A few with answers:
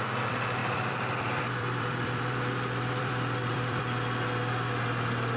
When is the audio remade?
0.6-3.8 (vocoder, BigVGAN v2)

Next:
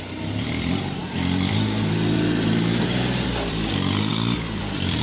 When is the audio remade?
0.0-5.0 (vocoder, BigVGAN v2)

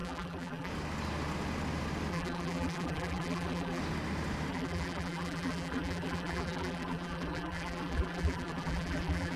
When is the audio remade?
0.0-0.7 (vocoder, BigVGAN v2); 2.1-3.8; 4.5-9.4

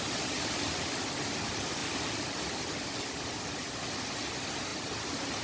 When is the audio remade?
1.8-3.3 (vocoder, BigVGAN v2)